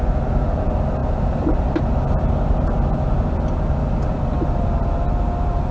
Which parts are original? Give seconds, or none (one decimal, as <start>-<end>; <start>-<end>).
0.0-5.7